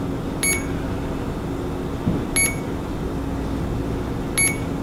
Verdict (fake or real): real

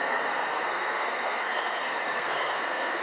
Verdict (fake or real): fake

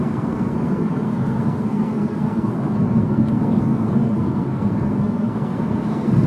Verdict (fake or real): fake